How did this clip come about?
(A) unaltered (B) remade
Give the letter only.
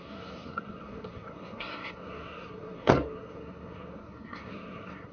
B